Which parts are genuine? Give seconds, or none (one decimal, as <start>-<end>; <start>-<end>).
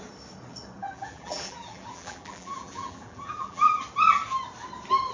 0.0-0.8; 3.7-5.1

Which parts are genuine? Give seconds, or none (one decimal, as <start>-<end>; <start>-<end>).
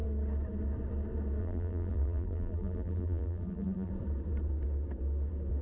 0.0-1.4; 3.9-5.6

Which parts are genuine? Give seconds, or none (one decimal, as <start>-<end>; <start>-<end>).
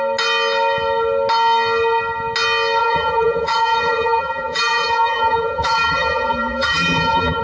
0.0-2.8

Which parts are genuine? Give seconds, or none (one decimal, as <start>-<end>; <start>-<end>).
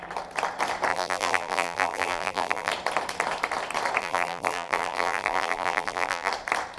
0.0-0.9; 2.7-4.0; 6.3-6.8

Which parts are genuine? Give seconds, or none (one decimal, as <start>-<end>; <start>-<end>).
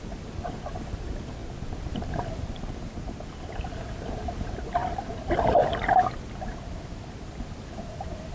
0.0-1.4; 2.7-4.8; 5.6-8.3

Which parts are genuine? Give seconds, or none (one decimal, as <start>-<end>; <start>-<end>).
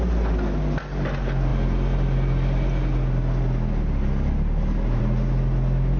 0.0-6.0